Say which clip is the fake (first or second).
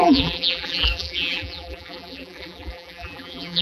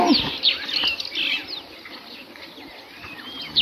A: first